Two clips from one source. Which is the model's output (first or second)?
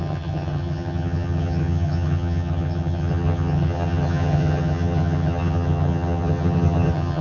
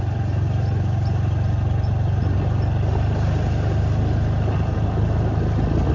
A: first